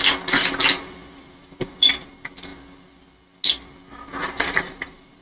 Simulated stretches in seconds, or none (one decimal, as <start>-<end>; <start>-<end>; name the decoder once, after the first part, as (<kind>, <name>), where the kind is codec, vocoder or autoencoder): 1.0-1.9 (vocoder, BigVGAN v2); 4.2-5.2